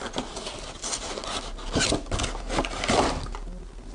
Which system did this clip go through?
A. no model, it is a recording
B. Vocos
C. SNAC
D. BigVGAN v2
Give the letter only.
A